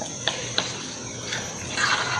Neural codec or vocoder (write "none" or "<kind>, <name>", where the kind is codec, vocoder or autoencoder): none